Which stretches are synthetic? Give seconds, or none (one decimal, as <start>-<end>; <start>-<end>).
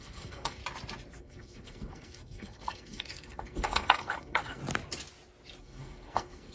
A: 0.0-0.6; 1.2-4.6; 5.6-6.5